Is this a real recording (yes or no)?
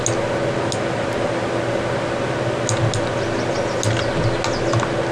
yes